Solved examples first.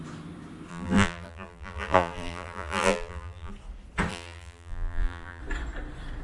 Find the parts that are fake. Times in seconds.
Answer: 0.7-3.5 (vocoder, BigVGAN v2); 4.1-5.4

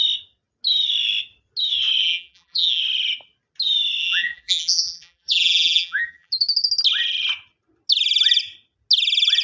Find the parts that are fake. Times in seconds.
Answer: 2.0-2.8 (vocoder, BigVGAN v2); 4.0-6.3

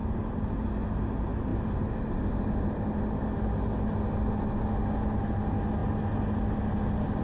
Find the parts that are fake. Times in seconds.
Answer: 0.0-0.6 (vocoder, BigVGAN v2); 1.5-2.7

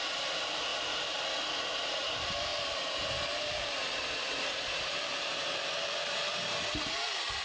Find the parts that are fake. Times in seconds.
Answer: 0.0-2.5 (vocoder, BigVGAN v2); 3.2-7.4

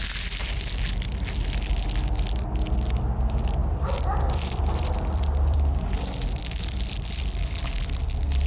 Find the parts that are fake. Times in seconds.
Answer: 3.6-7.4 (vocoder, BigVGAN v2)